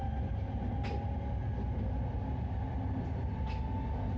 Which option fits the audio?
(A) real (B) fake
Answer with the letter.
A